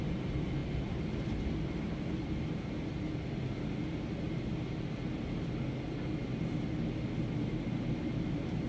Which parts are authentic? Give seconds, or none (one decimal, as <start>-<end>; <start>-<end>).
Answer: 0.0-8.7